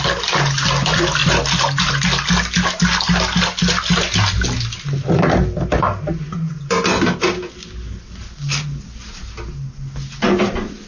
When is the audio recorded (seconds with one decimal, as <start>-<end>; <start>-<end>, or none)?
0.0-10.9